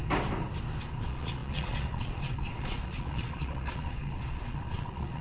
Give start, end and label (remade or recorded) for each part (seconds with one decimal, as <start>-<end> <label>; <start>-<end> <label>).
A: 0.0-1.0 recorded; 1.0-5.2 remade